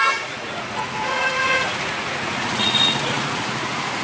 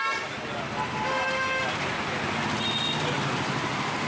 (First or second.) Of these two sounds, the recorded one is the second